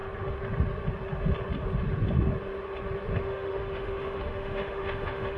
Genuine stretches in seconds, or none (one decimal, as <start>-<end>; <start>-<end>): 0.0-3.2